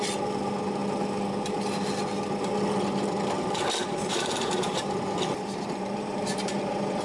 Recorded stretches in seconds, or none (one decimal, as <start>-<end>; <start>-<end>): 0.0-3.8